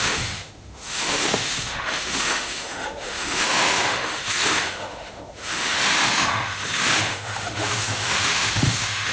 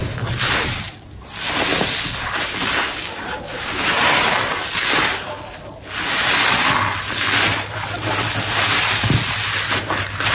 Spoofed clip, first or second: first